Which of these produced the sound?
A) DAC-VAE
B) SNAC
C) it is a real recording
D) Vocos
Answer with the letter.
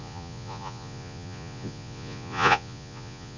D